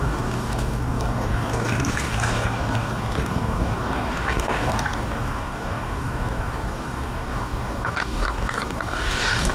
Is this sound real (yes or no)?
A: no